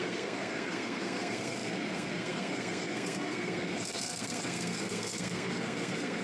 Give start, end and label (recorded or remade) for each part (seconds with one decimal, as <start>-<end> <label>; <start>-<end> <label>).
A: 0.0-6.2 remade